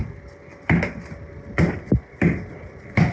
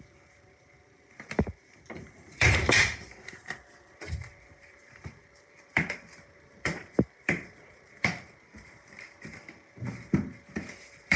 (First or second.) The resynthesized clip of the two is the second